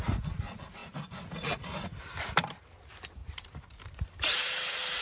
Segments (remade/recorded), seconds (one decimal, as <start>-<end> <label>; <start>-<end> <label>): 0.0-3.2 recorded; 3.2-4.0 remade; 4.0-5.0 recorded